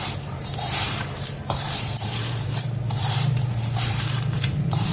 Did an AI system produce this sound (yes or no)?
yes